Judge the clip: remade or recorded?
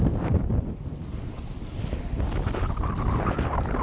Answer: recorded